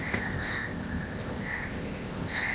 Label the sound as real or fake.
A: fake